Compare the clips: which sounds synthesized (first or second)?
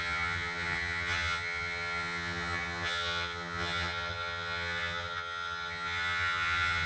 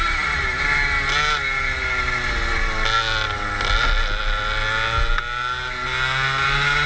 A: first